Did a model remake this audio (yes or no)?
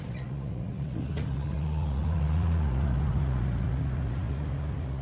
yes